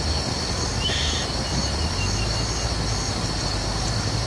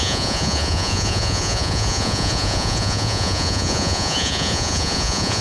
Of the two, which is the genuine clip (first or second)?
first